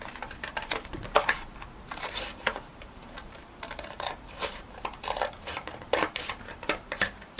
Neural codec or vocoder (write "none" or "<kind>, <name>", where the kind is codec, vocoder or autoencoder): vocoder, BigVGAN v2